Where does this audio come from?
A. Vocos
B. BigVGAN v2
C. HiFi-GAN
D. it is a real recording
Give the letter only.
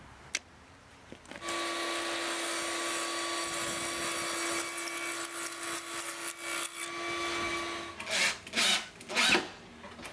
D